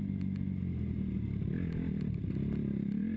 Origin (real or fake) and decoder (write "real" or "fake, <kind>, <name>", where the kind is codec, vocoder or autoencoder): real